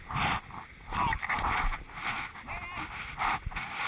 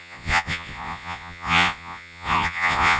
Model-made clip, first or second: second